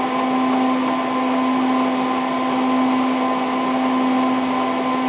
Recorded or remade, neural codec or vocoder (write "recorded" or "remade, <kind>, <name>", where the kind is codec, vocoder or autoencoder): recorded